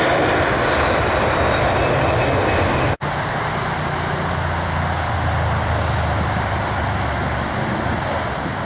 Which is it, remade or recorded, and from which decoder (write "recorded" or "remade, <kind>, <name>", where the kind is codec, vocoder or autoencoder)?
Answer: recorded